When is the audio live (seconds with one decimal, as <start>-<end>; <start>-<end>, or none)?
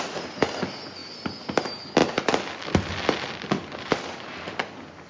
0.0-5.1